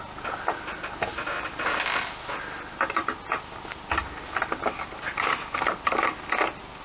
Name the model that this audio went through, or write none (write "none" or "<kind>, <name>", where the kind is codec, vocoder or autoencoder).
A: none